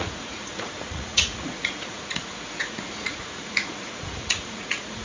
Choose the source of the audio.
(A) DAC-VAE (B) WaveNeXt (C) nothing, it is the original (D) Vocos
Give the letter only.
D